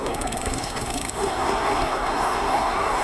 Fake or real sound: fake